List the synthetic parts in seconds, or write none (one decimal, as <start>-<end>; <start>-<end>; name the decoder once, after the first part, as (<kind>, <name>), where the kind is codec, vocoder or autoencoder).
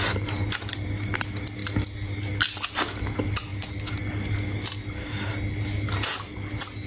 none